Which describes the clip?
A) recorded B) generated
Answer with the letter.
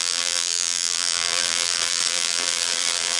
B